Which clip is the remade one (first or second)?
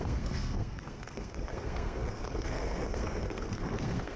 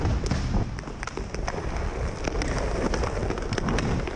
first